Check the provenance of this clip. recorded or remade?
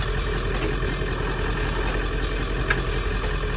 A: recorded